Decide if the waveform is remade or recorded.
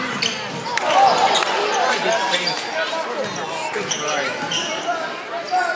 recorded